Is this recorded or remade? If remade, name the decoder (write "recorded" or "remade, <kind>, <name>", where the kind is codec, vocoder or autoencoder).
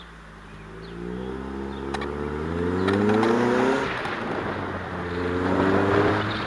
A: recorded